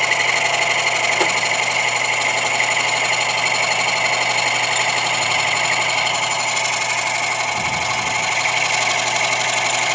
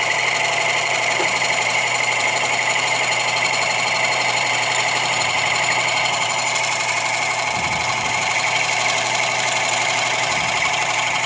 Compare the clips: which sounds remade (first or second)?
second